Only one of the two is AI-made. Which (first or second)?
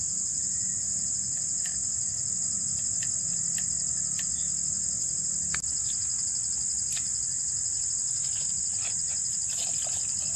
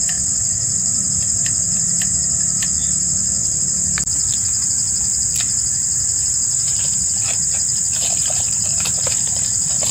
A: second